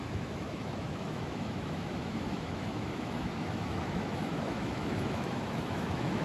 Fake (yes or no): yes